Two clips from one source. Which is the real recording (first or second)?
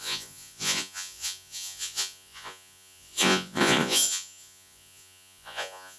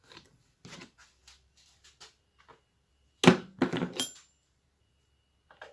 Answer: second